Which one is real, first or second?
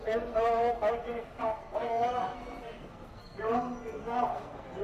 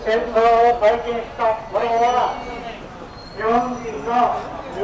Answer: second